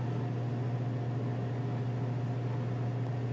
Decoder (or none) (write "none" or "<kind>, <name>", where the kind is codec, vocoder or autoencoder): none